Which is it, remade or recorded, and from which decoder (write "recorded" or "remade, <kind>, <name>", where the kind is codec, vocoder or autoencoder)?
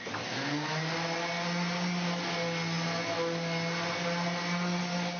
recorded